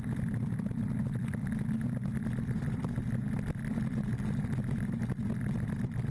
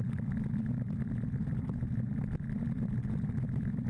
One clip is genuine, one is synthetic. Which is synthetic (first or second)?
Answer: second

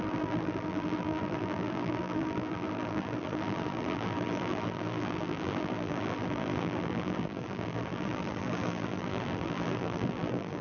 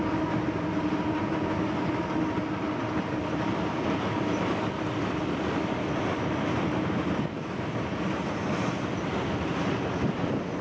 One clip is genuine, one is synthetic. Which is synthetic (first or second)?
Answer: first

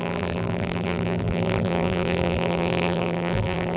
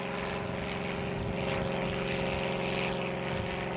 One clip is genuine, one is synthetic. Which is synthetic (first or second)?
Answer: first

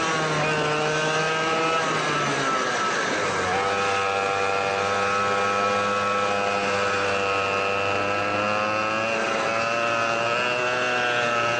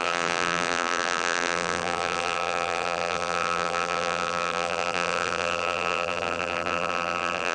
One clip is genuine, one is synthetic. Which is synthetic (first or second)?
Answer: second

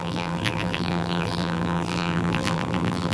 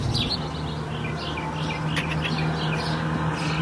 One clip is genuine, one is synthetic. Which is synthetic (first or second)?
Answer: first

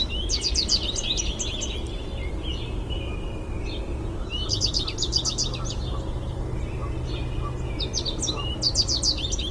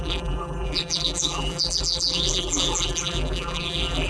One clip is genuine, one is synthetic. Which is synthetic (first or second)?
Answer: second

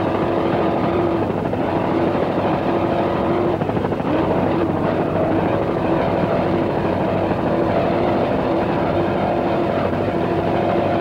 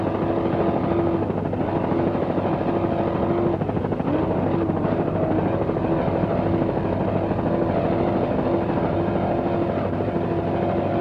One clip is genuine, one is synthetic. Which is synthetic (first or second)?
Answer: first